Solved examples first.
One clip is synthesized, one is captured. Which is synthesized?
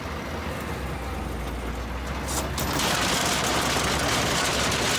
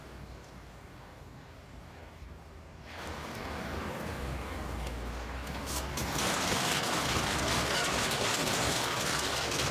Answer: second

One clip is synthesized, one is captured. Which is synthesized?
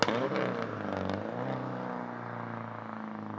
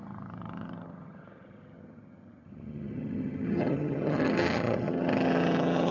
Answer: second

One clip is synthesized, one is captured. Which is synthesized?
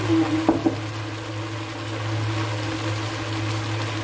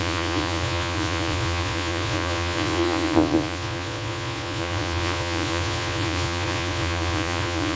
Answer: second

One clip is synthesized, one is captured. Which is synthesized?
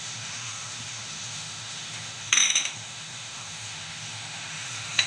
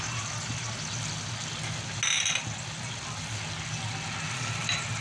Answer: first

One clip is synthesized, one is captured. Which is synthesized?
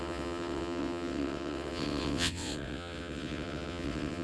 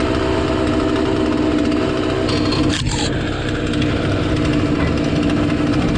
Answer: first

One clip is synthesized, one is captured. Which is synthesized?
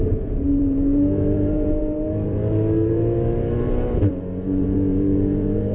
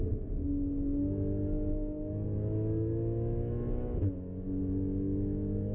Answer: first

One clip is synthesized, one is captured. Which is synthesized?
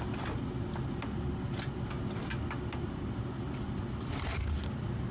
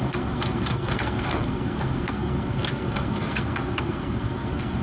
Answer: second